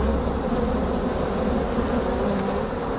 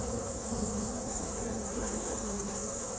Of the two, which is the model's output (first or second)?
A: second